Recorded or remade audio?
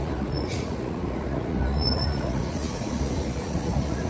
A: remade